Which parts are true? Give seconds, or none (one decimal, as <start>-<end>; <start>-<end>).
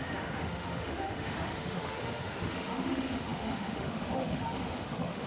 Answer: none